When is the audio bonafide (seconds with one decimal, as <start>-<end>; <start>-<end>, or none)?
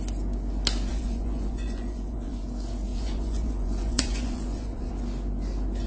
0.0-0.9; 2.4-2.9; 4.9-5.9